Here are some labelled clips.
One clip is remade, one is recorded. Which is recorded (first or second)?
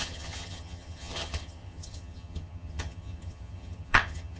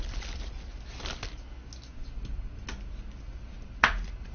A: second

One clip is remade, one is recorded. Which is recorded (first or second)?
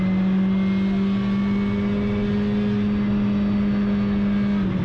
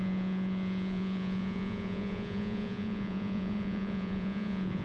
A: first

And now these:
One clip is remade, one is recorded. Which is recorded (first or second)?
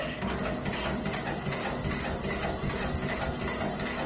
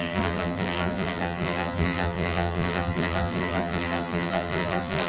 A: first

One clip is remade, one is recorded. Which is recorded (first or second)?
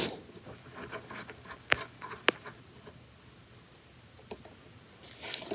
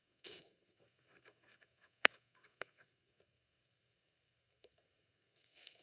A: first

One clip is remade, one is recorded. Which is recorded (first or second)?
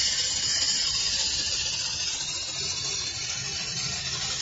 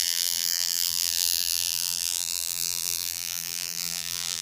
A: first